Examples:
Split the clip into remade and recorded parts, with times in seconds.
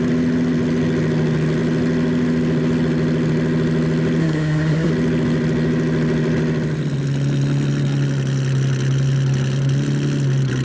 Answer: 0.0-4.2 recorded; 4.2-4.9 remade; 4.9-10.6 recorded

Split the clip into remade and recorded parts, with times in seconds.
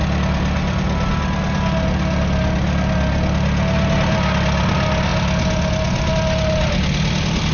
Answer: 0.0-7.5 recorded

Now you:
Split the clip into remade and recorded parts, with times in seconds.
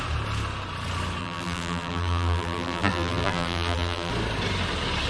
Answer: 0.0-1.2 recorded; 1.2-4.1 remade; 4.1-5.1 recorded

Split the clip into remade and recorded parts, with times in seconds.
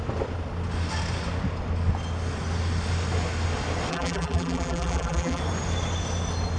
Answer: 0.0-3.9 recorded; 3.9-5.4 remade; 5.4-6.6 recorded